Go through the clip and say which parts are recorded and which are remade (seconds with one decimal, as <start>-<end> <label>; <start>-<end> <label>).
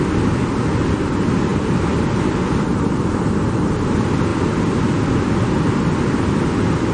0.0-4.3 recorded; 4.3-5.3 remade; 5.3-6.9 recorded